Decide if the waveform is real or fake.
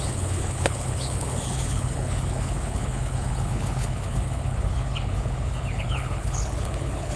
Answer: fake